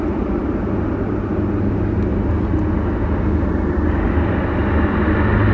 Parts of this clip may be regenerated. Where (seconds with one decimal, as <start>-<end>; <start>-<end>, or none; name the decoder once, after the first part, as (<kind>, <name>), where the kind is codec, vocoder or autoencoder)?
none